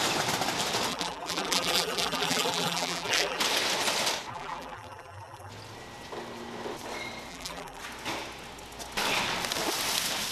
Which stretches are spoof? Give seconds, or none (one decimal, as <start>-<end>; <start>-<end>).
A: 0.9-3.4; 4.3-5.5; 7.3-7.8